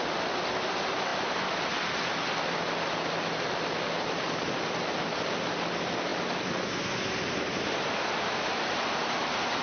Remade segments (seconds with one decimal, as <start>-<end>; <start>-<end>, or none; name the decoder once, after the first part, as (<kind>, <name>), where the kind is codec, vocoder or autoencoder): none